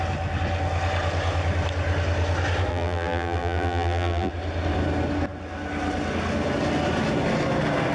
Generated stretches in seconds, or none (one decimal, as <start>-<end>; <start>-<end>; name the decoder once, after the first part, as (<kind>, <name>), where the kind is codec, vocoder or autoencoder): 2.7-4.3 (vocoder, BigVGAN v2)